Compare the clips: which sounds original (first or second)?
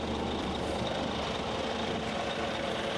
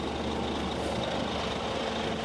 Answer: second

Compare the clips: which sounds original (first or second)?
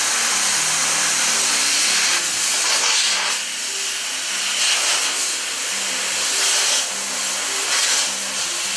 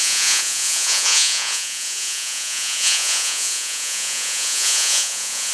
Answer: first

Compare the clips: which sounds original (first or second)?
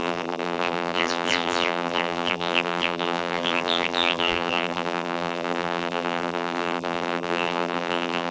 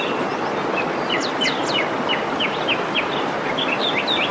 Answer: second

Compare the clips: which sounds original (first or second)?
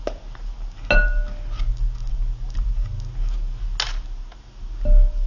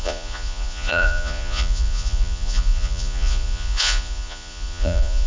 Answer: first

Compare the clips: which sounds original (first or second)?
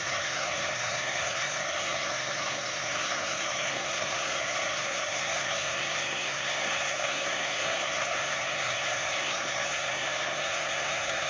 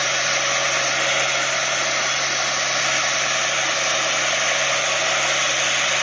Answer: second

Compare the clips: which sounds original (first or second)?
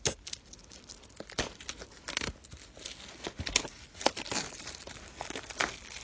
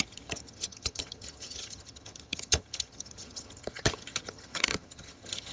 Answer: first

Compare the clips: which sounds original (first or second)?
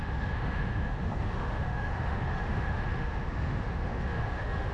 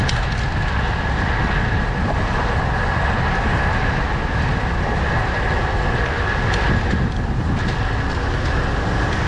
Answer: second